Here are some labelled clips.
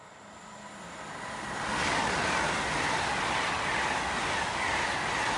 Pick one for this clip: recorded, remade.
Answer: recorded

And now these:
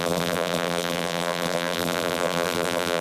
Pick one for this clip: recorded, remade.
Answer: remade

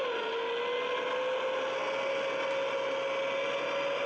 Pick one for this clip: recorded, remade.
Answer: recorded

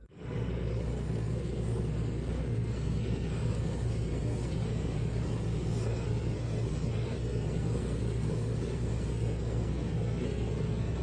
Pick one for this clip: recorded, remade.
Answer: remade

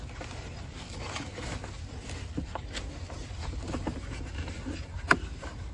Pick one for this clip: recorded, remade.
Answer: recorded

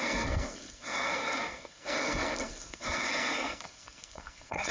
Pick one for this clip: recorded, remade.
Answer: remade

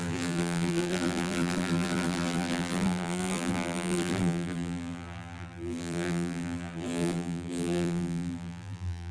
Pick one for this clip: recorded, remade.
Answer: remade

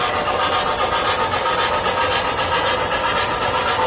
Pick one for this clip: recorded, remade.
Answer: recorded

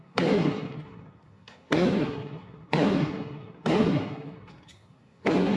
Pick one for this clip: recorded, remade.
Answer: remade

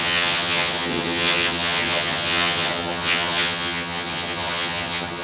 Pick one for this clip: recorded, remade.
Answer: remade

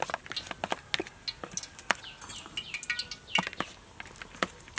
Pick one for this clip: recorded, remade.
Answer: recorded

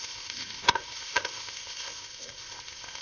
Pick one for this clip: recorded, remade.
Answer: remade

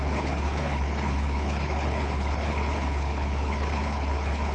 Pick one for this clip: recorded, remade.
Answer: remade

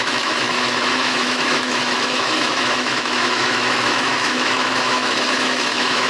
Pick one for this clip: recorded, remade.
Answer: remade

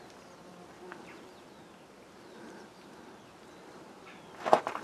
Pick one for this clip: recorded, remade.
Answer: recorded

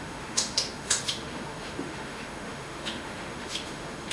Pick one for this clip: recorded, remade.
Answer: remade